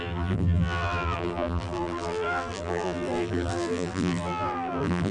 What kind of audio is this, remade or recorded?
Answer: remade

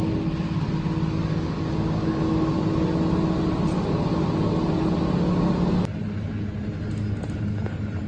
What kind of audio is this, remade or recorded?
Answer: recorded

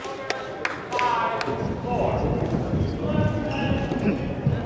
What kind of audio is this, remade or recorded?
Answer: recorded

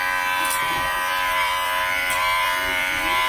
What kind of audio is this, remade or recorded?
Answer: remade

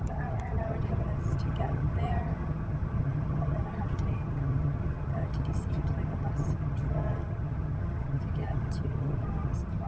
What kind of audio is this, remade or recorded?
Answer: remade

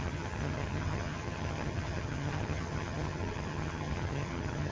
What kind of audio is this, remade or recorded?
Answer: remade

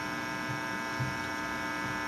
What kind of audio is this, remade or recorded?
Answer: recorded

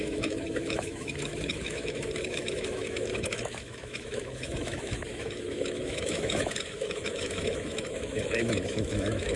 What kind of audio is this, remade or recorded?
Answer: remade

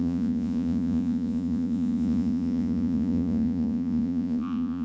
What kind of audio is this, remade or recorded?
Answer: remade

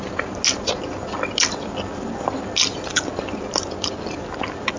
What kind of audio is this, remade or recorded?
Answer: recorded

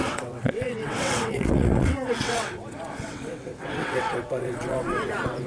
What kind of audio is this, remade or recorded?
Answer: remade